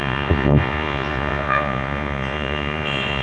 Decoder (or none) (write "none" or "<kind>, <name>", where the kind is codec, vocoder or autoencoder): vocoder, Vocos